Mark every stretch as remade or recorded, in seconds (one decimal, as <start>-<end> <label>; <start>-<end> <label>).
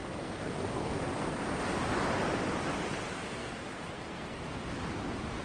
0.0-1.5 remade; 1.5-3.4 recorded; 3.4-4.4 remade; 4.4-5.4 recorded